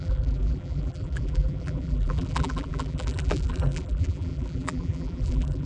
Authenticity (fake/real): fake